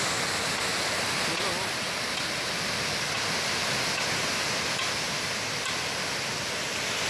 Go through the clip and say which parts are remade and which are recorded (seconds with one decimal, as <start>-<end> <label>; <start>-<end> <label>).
0.0-7.1 recorded